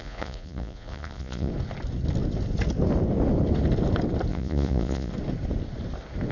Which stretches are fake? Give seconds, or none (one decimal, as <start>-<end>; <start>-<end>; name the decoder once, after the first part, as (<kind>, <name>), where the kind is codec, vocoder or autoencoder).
0.0-1.5 (vocoder, Vocos); 4.3-5.1